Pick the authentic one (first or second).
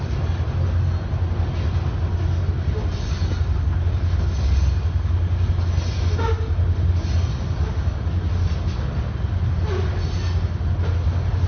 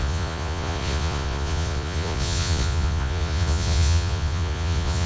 first